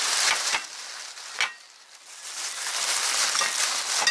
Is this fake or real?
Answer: real